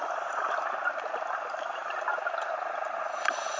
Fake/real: real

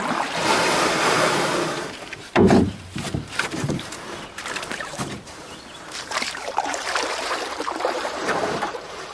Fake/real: fake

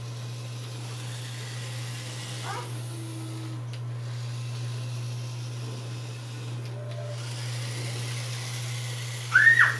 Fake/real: real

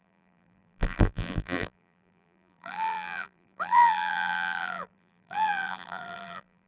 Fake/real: fake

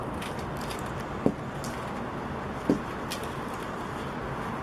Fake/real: real